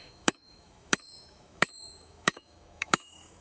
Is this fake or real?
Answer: fake